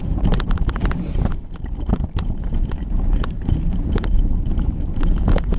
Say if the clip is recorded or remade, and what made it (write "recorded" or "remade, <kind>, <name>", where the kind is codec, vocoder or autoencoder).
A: remade, vocoder, BigVGAN v2